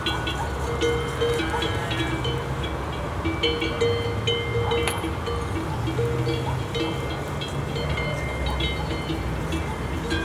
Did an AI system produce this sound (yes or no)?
no